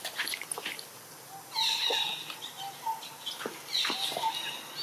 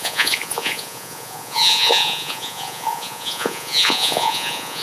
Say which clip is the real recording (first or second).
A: first